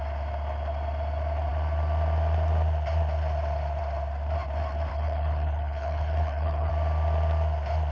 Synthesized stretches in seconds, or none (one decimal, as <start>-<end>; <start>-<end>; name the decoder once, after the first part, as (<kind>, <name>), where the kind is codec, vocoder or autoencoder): 4.9-6.7 (codec, HILCodec)